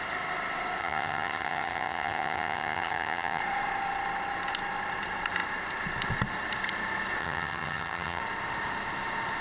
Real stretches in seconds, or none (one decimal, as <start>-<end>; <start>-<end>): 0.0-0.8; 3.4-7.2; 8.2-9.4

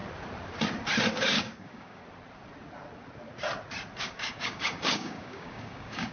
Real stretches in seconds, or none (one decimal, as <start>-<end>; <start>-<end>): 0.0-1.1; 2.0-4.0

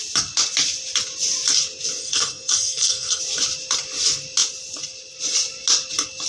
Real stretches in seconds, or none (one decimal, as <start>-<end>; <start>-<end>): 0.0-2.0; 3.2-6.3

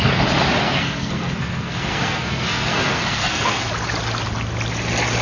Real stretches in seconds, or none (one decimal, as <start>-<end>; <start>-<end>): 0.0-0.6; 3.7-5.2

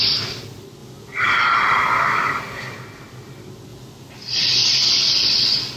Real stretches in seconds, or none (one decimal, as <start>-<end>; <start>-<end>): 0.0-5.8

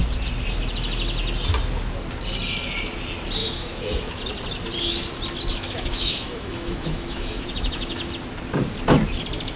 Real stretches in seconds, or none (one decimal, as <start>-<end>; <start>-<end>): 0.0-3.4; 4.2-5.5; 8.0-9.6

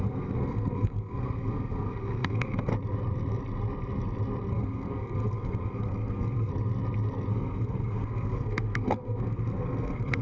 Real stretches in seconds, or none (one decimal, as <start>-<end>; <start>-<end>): 2.7-4.5; 6.5-7.3